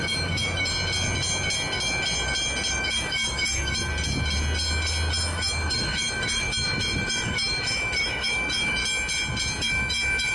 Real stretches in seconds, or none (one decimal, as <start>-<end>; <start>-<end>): 0.7-2.7; 3.9-5.1; 8.8-9.6